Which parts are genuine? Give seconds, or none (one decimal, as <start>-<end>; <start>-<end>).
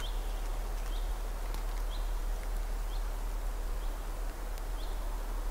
0.0-5.5